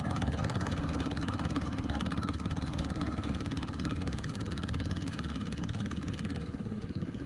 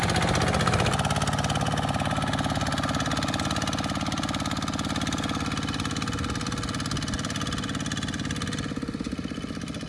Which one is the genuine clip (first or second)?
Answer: second